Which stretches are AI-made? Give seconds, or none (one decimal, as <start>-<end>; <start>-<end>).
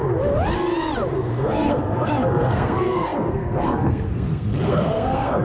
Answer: 1.3-5.4